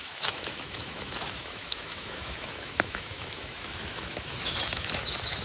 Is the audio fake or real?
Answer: fake